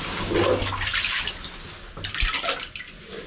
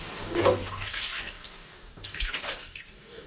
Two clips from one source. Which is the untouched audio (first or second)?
first